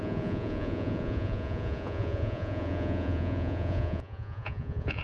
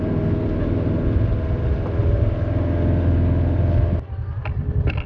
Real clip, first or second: second